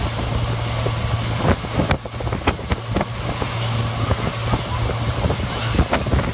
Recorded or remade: recorded